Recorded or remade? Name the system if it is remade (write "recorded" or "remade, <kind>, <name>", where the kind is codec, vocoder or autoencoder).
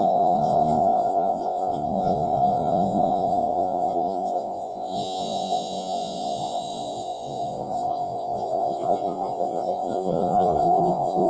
remade, vocoder, Vocos